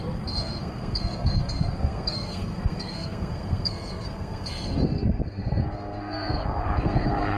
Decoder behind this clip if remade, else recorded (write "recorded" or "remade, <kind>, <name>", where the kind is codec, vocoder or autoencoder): remade, codec, SNAC